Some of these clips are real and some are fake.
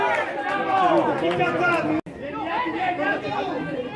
real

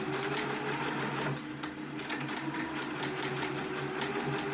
real